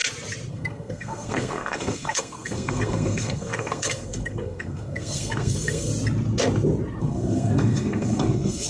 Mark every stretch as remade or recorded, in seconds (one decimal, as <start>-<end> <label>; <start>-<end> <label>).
0.0-0.5 recorded; 0.5-5.9 remade; 5.9-7.0 recorded; 7.0-8.7 remade